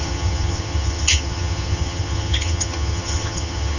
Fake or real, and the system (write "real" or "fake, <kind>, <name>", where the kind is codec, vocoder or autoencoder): fake, vocoder, HiFi-GAN